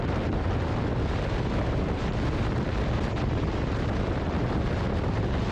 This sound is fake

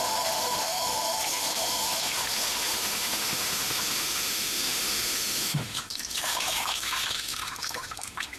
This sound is fake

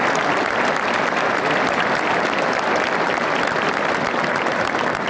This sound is real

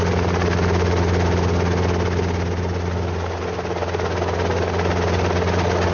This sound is real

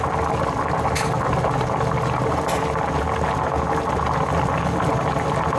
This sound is real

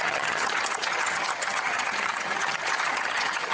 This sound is fake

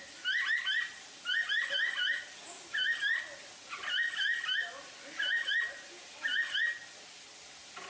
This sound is real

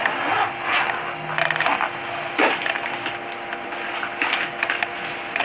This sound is real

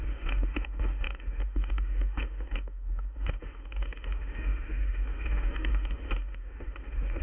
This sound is fake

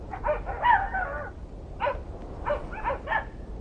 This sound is real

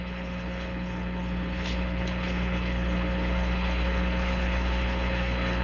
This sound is fake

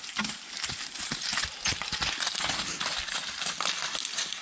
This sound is real